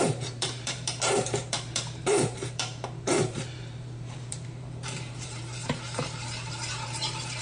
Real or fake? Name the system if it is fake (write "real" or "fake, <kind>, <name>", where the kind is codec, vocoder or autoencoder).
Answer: fake, vocoder, BigVGAN v2